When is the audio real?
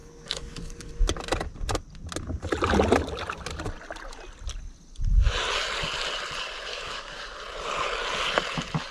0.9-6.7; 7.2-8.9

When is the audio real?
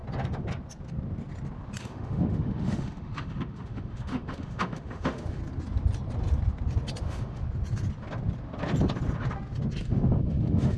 0.0-1.8; 5.4-7.0; 7.4-9.8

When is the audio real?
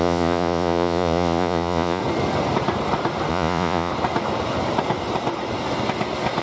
2.0-3.3; 3.9-6.4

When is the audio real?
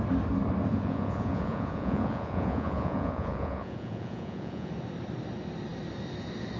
0.0-0.7; 4.7-6.6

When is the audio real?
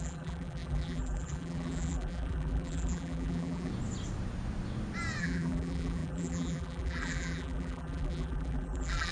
3.7-5.2